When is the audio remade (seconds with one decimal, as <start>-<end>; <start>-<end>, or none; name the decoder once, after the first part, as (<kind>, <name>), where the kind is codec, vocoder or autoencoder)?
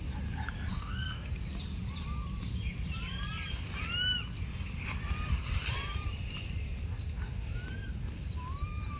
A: 0.7-1.3 (codec, SNAC)